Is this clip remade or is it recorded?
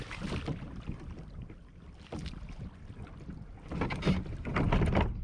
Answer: recorded